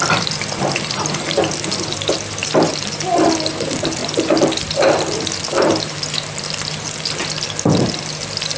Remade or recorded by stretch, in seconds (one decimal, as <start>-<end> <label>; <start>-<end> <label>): 0.0-8.6 recorded